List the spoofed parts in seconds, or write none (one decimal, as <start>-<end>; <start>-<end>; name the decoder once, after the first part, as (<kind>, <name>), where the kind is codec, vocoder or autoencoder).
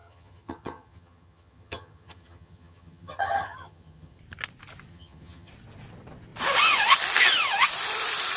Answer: 0.0-4.2 (vocoder, HiFi-GAN); 4.9-5.5